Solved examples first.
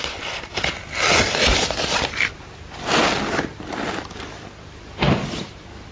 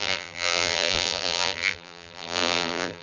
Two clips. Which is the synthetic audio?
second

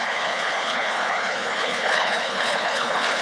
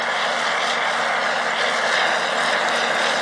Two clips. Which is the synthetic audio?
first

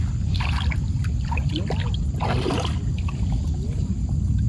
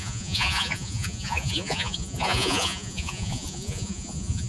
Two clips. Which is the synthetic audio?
second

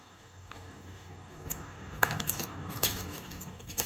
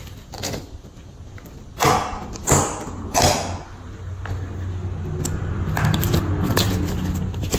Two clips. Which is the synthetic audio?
first